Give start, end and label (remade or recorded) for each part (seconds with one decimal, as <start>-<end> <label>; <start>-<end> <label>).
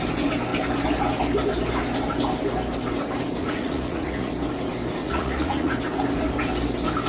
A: 0.0-3.4 recorded; 3.4-4.3 remade; 4.3-5.0 recorded; 5.0-5.7 remade; 5.7-7.1 recorded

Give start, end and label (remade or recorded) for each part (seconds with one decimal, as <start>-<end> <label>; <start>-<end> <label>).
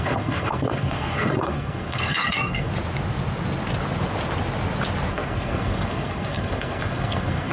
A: 0.0-2.7 remade; 2.7-5.1 recorded; 5.1-7.5 remade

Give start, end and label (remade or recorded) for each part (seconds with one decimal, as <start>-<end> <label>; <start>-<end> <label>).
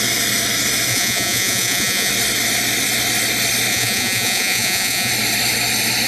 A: 0.0-0.9 recorded; 0.9-2.1 remade; 2.1-3.7 recorded; 3.7-5.1 remade; 5.1-6.1 recorded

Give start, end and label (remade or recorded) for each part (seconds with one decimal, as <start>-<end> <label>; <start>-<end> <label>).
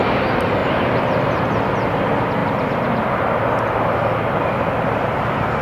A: 0.0-0.6 recorded; 0.6-1.5 remade; 1.5-5.6 recorded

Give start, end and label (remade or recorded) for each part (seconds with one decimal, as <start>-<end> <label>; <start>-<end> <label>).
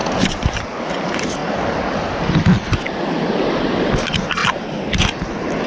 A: 0.0-0.9 recorded; 0.9-1.4 remade; 1.4-3.5 recorded; 3.5-5.7 remade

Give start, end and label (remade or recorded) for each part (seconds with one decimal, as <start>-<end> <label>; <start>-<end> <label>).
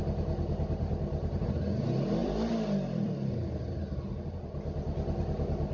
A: 0.0-2.2 recorded; 2.2-3.3 remade; 3.3-5.7 recorded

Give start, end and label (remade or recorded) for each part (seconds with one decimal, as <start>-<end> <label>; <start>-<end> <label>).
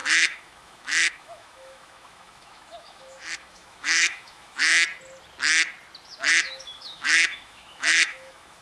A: 0.0-4.7 remade; 4.7-6.3 recorded; 6.3-8.6 remade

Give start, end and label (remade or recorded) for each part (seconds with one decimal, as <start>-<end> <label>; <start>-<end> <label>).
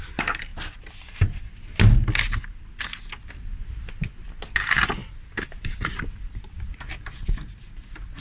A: 0.0-8.2 recorded